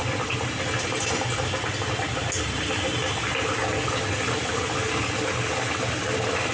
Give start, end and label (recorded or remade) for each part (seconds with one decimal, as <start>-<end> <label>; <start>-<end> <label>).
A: 0.0-6.5 recorded